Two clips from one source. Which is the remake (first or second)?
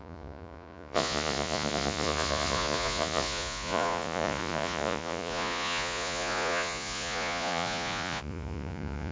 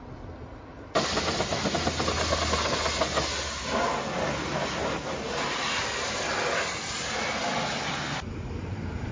first